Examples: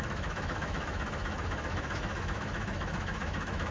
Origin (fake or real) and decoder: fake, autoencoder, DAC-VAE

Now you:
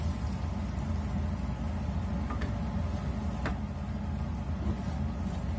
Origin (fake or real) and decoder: real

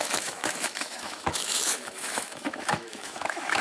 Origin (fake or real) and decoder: fake, autoencoder, DAC-VAE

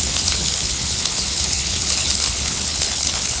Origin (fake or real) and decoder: fake, codec, HILCodec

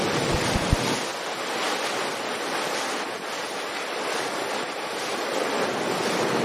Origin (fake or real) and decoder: fake, vocoder, BigVGAN v2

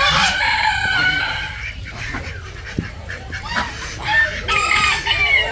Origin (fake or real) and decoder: fake, vocoder, BigVGAN v2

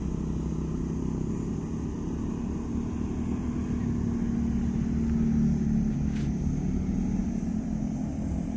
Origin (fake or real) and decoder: real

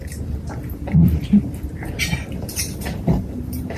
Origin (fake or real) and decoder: fake, vocoder, BigVGAN v2